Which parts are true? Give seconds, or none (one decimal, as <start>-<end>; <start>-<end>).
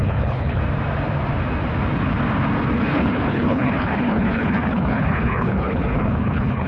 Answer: 0.6-2.9